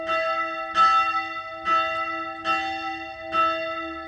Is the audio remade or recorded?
recorded